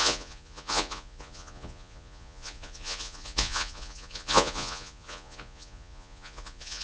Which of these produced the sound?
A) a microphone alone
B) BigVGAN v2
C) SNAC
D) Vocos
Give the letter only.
D